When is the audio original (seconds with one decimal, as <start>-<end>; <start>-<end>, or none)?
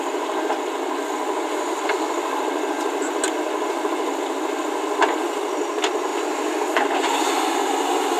0.0-8.2